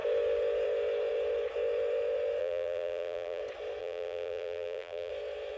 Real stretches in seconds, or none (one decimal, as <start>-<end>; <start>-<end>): 0.0-2.4; 3.4-3.8; 5.1-5.6

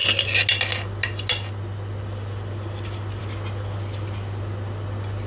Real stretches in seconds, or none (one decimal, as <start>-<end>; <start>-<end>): 0.0-5.3

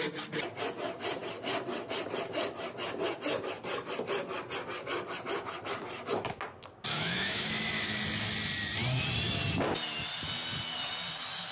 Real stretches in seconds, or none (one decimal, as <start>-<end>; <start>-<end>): 0.0-6.9; 7.5-11.5

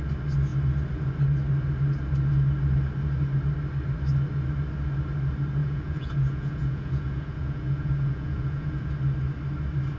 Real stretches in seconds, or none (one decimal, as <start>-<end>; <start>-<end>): 0.0-5.6; 8.9-10.0

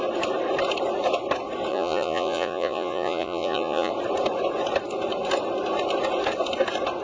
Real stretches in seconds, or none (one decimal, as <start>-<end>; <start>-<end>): 0.0-1.7; 3.9-7.0

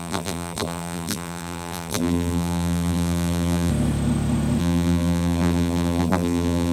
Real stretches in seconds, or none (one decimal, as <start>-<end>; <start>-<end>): 3.7-4.6

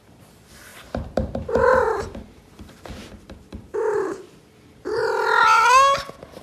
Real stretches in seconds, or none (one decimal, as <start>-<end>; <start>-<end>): 5.0-6.4

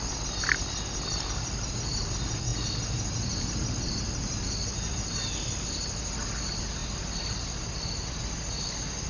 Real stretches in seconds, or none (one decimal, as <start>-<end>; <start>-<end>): 0.0-9.1